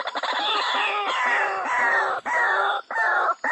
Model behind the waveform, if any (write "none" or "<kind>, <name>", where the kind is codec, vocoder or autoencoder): none